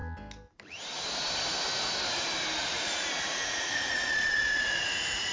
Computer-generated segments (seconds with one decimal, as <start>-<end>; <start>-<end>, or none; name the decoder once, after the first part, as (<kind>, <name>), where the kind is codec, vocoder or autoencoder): 2.6-5.3 (vocoder, Vocos)

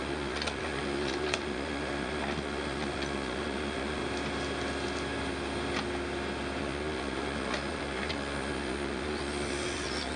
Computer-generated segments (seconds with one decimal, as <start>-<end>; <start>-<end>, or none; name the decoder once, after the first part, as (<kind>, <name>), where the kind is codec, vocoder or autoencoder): 0.0-4.0 (vocoder, Vocos); 6.6-10.2

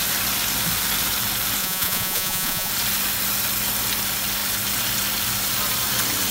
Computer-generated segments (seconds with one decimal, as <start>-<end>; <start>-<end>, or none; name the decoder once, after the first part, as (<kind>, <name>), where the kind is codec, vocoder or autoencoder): 1.6-2.7 (vocoder, Vocos)

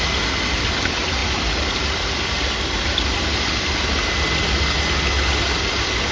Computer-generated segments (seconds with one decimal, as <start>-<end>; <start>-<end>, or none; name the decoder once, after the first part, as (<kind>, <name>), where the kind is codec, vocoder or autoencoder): none